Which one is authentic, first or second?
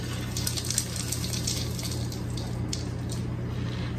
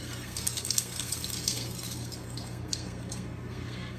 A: first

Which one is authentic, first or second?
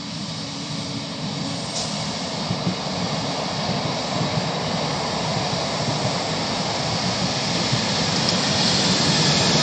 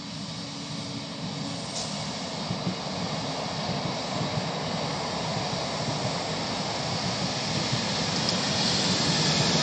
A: second